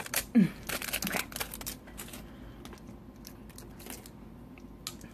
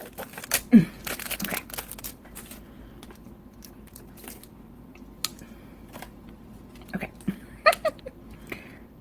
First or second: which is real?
first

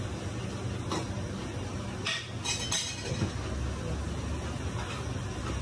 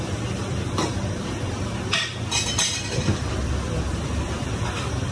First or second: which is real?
first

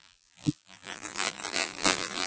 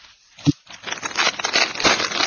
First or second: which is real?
second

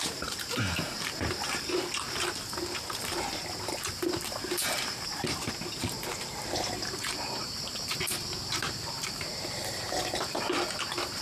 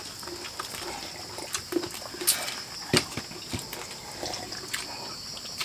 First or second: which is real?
second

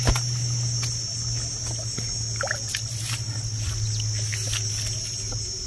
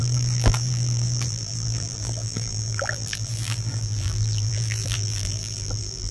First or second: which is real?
first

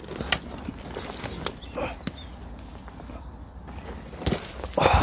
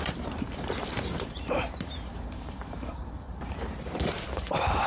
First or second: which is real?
first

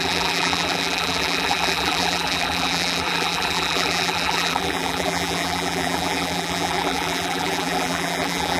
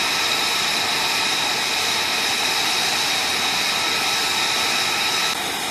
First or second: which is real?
second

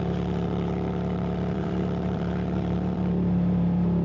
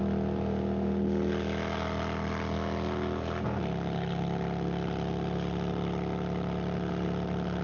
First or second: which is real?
second